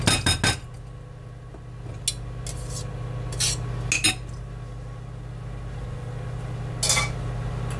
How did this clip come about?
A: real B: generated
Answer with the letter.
A